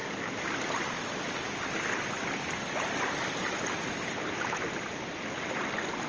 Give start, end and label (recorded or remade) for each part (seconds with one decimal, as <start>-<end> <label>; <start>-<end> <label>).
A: 0.0-6.1 recorded